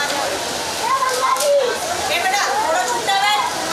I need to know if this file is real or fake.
fake